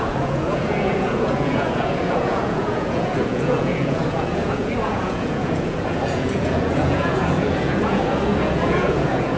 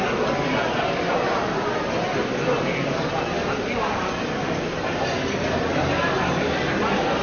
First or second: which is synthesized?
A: first